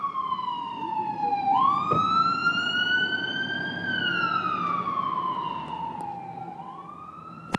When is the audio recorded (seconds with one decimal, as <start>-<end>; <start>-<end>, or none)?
0.0-7.6